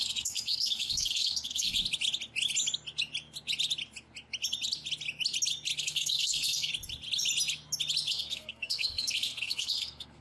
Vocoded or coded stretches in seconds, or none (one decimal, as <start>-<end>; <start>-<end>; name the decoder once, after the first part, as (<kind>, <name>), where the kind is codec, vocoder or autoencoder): 0.0-1.8 (codec, SNAC); 5.8-6.7; 8.1-10.2